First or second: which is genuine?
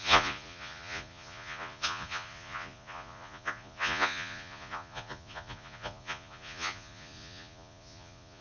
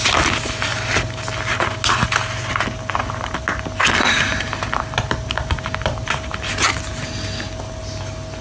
second